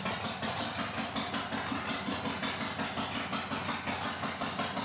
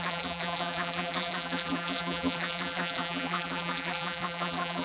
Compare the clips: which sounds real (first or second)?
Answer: first